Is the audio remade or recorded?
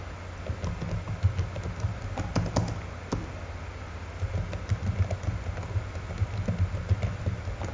recorded